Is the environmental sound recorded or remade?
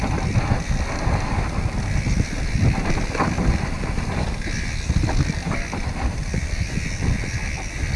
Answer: recorded